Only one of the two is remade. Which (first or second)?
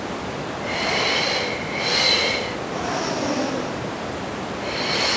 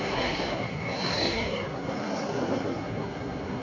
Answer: second